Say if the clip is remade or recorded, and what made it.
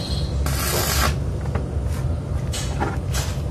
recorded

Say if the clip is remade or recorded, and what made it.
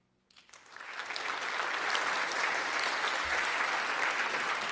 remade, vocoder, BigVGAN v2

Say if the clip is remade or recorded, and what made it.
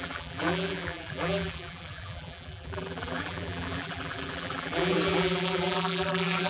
remade, vocoder, BigVGAN v2